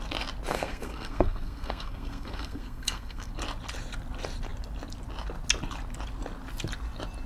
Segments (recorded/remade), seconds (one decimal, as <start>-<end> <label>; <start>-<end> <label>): 0.0-0.5 recorded; 0.5-3.3 remade; 3.3-7.3 recorded